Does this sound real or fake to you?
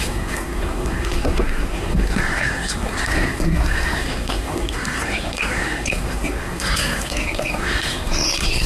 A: fake